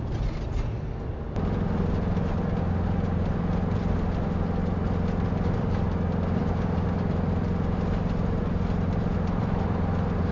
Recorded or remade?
recorded